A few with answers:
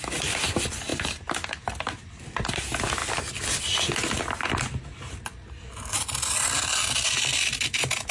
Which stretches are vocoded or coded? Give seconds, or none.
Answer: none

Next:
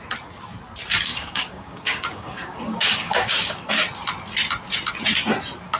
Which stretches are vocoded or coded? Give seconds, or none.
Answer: 1.1-3.7 (codec, DAC)

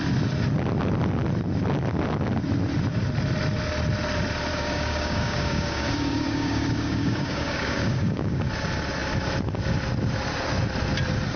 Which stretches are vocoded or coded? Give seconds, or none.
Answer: 4.5-8.5 (codec, DAC)

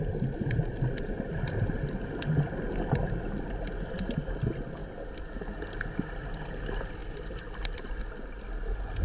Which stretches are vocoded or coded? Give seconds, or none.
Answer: none